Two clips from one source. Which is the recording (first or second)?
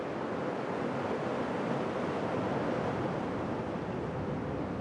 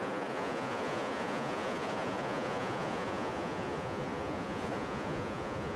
first